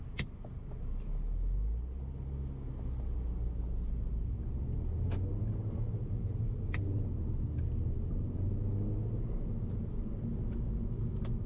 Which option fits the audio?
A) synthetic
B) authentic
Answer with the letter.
B